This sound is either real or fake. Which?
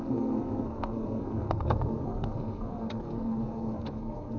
fake